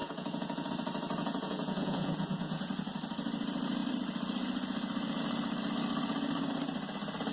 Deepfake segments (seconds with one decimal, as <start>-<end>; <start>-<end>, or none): 0.0-0.7; 1.2-2.8